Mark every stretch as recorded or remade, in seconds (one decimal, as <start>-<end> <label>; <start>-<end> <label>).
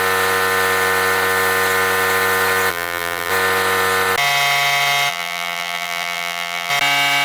0.0-2.7 recorded; 2.7-3.3 remade; 3.3-5.1 recorded; 5.1-6.7 remade; 6.7-7.2 recorded